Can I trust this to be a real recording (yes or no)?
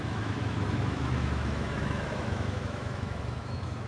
no